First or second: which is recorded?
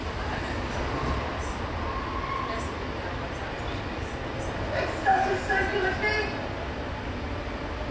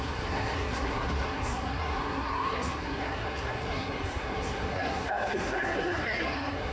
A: first